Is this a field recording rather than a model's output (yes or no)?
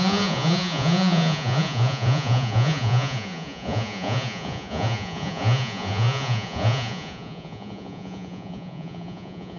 no